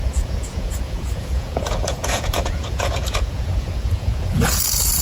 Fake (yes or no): yes